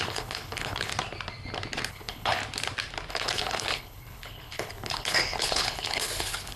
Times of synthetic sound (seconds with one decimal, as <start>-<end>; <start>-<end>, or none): 0.0-0.9; 1.9-2.4; 3.1-6.6